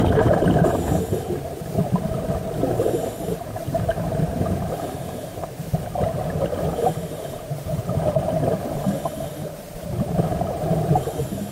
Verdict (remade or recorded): remade